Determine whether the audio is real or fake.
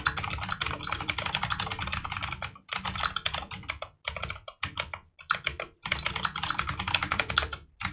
fake